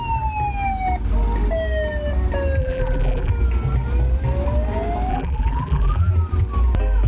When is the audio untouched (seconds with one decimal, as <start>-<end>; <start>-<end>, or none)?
0.0-2.6; 3.3-5.1; 6.1-7.1